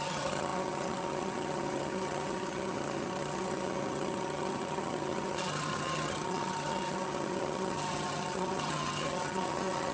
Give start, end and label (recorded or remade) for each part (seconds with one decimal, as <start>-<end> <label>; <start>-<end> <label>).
0.0-9.9 remade